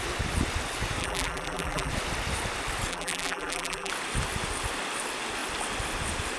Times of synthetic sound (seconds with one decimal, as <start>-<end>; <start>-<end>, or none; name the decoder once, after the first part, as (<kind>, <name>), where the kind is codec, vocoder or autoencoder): 1.0-1.9 (vocoder, BigVGAN v2); 2.9-3.9